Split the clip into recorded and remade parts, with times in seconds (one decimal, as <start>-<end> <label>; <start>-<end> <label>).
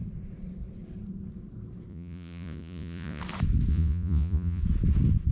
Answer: 0.0-1.9 recorded; 1.9-3.2 remade; 3.2-3.7 recorded; 3.7-4.6 remade; 4.6-5.3 recorded